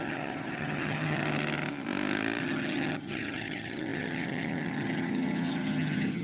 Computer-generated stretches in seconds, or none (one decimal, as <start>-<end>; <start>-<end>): 0.0-1.2; 2.4-6.2